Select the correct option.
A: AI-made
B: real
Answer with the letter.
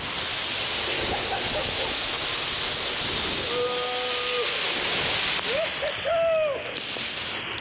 B